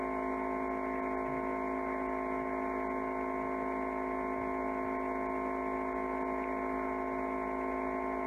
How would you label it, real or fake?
real